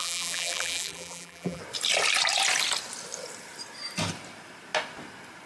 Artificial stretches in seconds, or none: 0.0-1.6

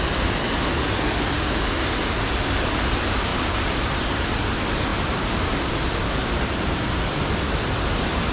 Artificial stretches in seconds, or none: 3.3-4.4; 6.2-7.1

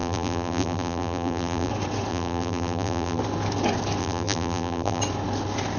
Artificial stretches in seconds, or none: 0.0-1.7; 2.1-3.2; 4.0-5.0

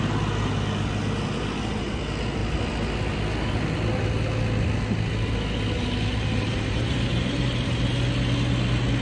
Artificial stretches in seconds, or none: 6.1-7.8